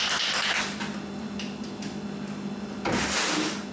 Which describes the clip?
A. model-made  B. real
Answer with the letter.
B